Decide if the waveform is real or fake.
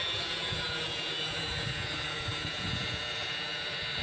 fake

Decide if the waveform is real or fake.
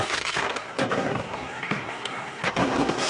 fake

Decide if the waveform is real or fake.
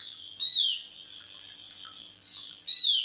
fake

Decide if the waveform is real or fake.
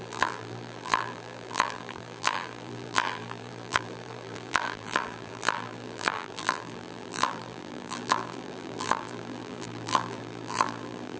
fake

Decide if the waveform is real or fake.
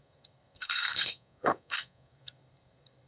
fake